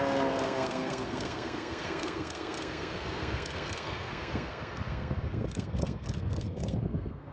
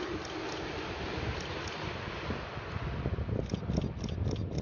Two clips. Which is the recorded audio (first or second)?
second